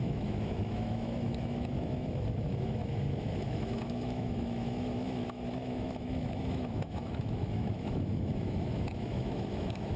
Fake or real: fake